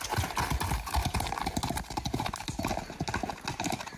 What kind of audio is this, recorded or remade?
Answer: recorded